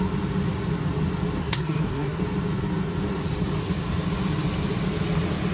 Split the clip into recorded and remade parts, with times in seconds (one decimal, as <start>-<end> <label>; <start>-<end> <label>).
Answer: 0.0-1.4 recorded; 1.4-2.2 remade; 2.2-5.5 recorded